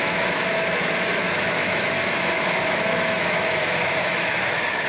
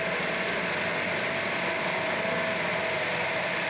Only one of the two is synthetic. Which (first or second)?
first